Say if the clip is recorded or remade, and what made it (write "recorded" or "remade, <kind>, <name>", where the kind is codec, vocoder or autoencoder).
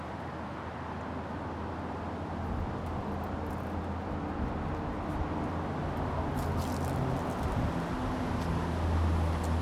recorded